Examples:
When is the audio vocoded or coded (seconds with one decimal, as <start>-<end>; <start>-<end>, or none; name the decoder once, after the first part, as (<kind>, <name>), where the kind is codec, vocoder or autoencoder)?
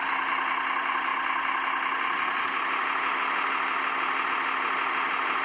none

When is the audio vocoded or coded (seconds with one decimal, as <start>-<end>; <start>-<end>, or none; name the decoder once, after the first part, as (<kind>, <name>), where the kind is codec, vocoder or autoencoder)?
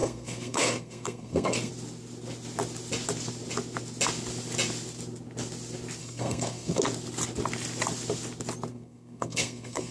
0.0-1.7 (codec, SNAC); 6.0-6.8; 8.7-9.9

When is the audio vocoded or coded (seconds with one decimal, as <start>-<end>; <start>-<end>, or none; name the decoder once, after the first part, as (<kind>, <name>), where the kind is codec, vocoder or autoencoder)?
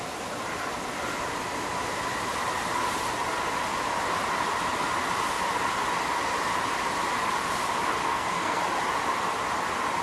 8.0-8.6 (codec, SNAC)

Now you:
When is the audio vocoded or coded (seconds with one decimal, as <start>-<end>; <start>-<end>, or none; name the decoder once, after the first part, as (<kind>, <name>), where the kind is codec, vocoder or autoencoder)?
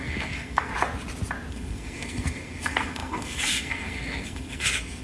0.0-0.7 (codec, SNAC); 1.5-5.0